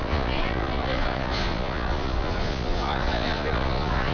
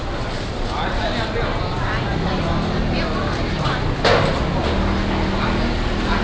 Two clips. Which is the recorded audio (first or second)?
second